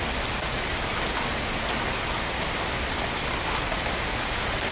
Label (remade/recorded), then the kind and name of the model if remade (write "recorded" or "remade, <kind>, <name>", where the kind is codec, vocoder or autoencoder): recorded